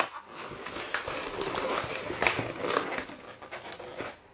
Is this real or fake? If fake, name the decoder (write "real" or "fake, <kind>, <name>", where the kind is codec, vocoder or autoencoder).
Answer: real